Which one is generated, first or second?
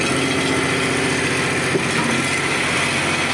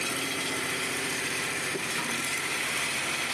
second